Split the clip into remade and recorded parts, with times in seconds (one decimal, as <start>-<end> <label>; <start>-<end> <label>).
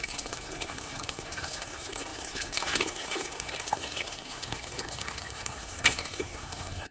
0.0-6.9 remade